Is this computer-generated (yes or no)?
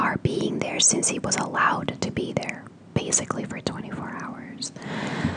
no